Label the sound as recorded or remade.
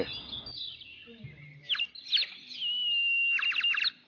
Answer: recorded